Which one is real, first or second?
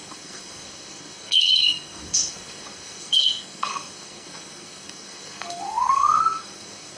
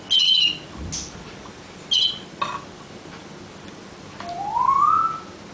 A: second